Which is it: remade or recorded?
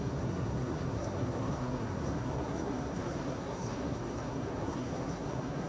remade